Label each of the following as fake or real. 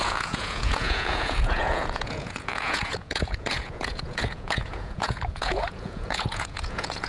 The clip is fake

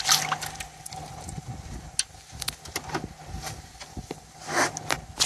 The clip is real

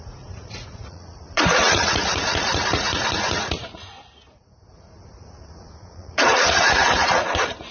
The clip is fake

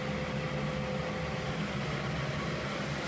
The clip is real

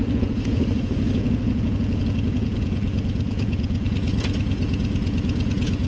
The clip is fake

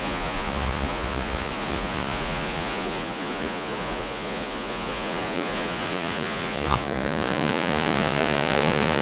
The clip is fake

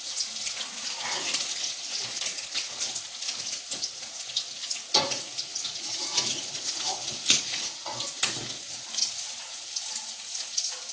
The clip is fake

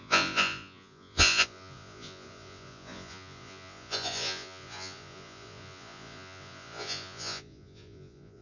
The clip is fake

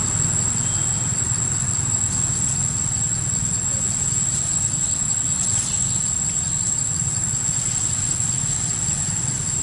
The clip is real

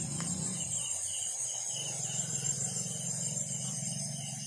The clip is fake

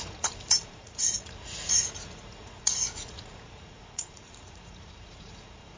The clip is fake